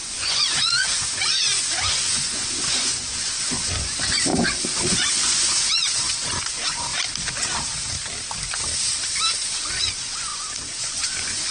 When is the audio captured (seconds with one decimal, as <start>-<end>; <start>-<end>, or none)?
6.9-9.3